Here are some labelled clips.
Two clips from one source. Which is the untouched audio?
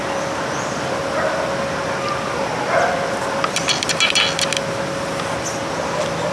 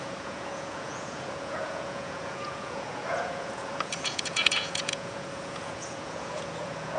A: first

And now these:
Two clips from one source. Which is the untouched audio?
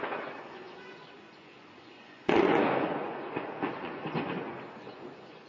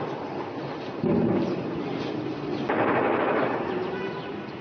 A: second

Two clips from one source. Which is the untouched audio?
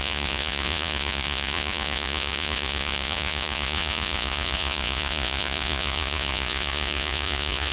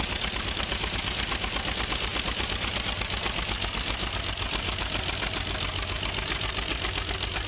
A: second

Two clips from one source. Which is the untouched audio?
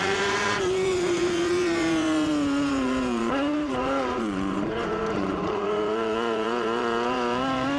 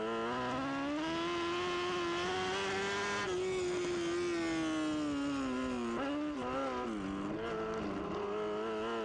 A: second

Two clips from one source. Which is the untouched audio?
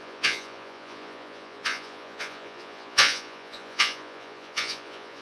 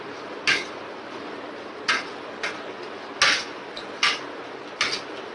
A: second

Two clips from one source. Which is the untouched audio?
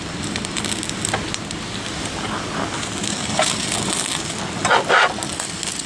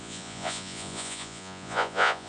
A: first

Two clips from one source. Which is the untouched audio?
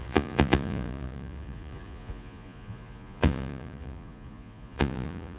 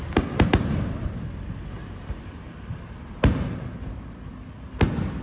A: second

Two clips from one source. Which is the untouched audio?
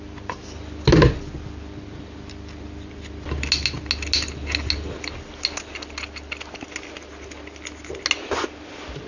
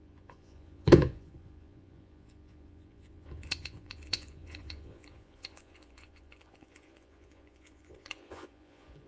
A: first